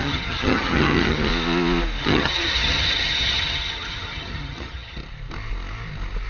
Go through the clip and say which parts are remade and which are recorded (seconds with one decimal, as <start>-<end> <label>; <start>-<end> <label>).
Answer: 0.0-1.3 remade; 1.3-2.0 recorded; 2.0-5.0 remade; 5.0-6.3 recorded